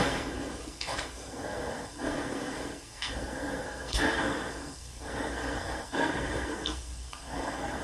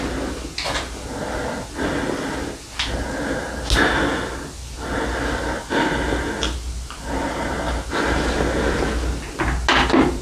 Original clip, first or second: second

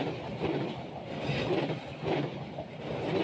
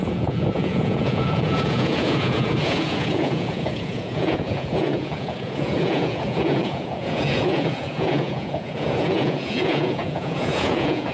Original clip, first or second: first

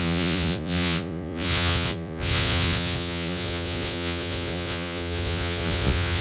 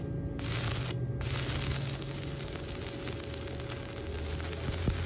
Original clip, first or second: second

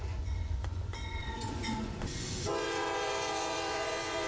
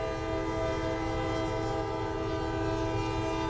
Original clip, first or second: second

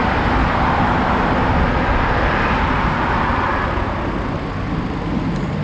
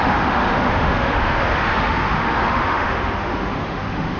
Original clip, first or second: first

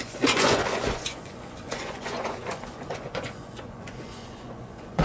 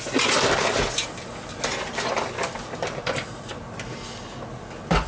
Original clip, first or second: second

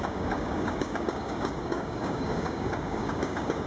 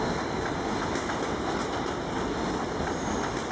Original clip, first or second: second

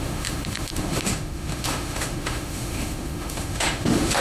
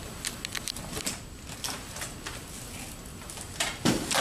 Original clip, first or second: second